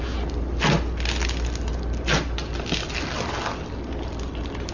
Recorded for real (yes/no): yes